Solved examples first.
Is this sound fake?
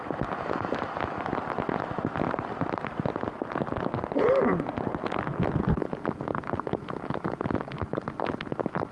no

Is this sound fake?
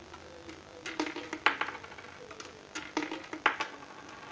no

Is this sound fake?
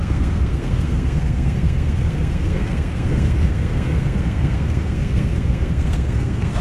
yes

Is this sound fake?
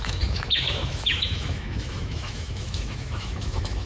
yes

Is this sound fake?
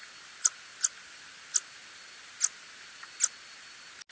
no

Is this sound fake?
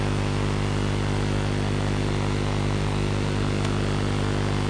no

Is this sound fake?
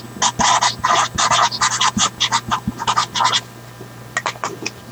no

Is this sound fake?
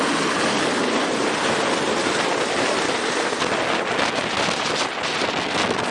no